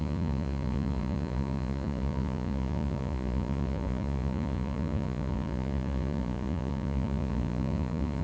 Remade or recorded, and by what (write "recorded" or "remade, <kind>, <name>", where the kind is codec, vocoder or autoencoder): remade, vocoder, Vocos